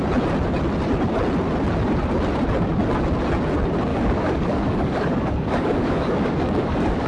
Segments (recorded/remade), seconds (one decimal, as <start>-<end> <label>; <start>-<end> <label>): 0.0-3.9 recorded; 3.9-7.1 remade